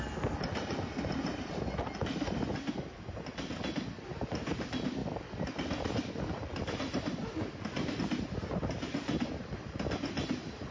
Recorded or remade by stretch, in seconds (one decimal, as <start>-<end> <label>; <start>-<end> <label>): 0.0-10.7 recorded